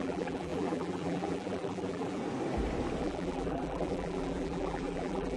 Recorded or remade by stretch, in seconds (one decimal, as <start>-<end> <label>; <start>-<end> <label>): 0.0-2.2 remade; 2.2-3.0 recorded; 3.0-5.4 remade